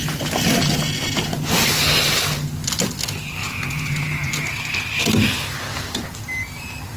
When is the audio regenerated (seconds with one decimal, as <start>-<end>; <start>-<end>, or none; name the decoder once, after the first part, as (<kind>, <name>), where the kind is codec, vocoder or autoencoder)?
3.4-4.3 (vocoder, Vocos)